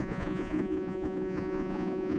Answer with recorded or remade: remade